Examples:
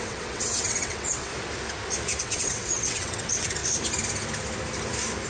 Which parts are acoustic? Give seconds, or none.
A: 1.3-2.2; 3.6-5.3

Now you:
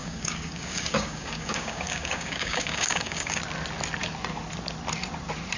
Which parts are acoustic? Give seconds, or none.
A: 3.4-5.6

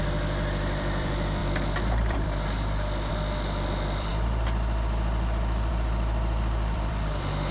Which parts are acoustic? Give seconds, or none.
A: 4.1-5.7